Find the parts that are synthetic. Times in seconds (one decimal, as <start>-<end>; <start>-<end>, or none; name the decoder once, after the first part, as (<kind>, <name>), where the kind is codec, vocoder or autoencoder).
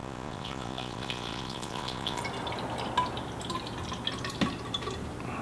0.0-2.2 (vocoder, Vocos)